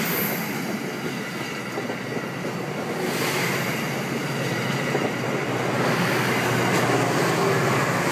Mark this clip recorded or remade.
recorded